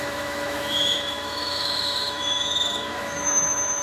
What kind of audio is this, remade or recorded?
remade